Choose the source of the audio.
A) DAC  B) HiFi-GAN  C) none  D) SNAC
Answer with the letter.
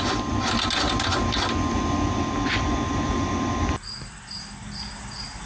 C